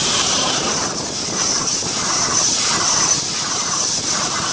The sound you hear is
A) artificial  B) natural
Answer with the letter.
A